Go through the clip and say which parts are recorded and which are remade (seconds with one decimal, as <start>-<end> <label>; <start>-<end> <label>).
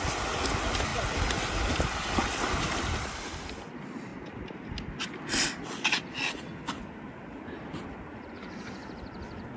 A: 0.0-9.6 recorded